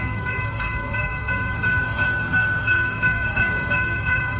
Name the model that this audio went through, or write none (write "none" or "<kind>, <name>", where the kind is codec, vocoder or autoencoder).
codec, SNAC